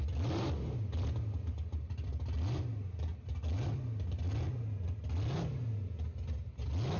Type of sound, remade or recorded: recorded